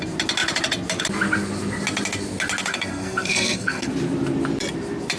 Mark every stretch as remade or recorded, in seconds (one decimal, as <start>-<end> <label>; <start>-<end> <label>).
0.0-2.7 recorded; 2.7-3.9 remade; 3.9-5.2 recorded